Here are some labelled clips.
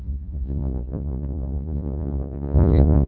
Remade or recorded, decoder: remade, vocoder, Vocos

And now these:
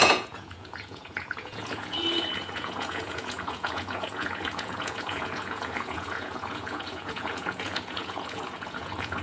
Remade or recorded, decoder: remade, vocoder, Vocos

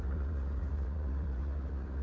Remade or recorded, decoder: remade, vocoder, Vocos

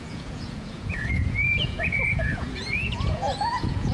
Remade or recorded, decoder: remade, vocoder, Vocos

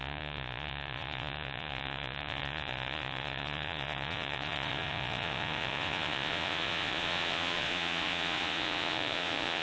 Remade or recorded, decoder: remade, vocoder, Vocos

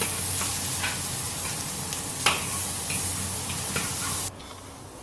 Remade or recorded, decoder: recorded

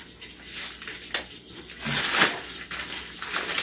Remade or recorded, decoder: recorded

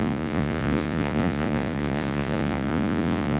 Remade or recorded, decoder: remade, vocoder, Vocos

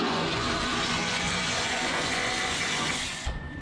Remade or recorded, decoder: remade, vocoder, Vocos